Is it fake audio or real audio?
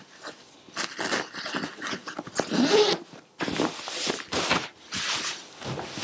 real